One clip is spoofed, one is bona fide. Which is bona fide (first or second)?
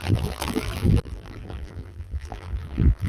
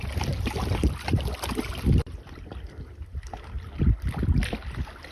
second